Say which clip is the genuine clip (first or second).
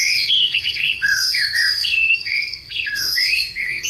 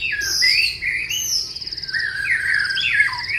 second